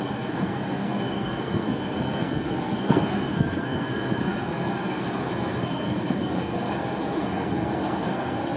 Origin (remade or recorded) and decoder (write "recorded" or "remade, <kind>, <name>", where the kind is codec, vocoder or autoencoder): remade, codec, SNAC